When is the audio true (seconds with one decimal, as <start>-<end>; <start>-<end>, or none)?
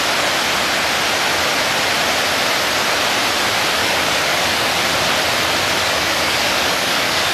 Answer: 0.0-3.8; 4.8-5.8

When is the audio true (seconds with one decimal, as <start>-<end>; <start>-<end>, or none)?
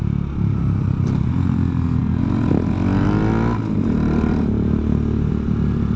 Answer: 0.0-6.0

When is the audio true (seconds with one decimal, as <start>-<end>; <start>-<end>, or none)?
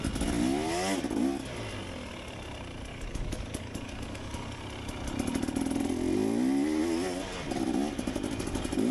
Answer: 0.0-2.9; 4.6-8.9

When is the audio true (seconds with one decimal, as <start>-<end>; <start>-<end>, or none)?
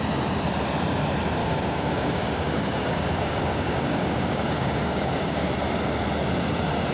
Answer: 0.0-1.4; 5.5-6.9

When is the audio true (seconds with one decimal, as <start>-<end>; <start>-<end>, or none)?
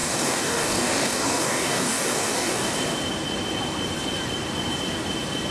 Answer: 2.7-5.5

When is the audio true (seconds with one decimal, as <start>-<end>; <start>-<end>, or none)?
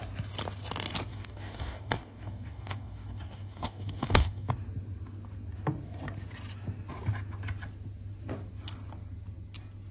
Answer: 0.0-1.1; 4.5-9.9